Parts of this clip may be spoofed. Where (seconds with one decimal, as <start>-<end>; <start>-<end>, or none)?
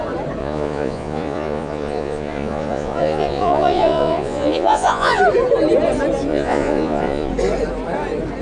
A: 0.4-5.2; 6.3-7.3